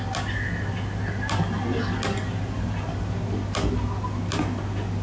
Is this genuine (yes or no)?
yes